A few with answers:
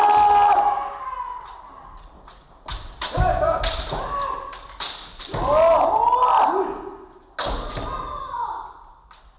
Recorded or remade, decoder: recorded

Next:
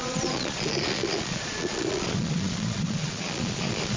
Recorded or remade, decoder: remade, vocoder, Vocos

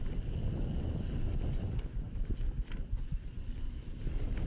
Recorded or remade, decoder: recorded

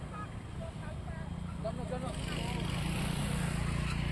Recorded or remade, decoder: recorded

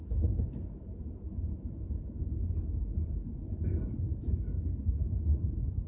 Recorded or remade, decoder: recorded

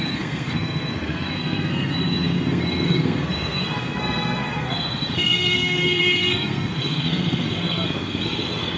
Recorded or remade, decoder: remade, codec, SNAC